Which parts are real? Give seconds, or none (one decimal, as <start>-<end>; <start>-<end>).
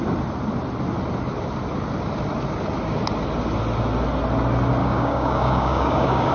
0.0-4.8